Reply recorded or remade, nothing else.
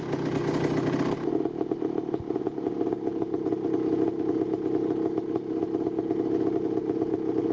recorded